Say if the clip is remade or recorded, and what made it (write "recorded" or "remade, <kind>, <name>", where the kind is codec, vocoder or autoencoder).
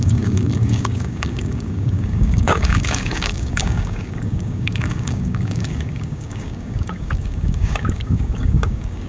remade, codec, DAC